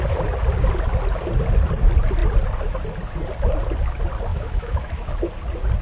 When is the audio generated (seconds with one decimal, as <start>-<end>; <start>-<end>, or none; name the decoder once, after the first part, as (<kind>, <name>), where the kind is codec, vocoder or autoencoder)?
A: 4.3-5.1 (autoencoder, DAC-VAE)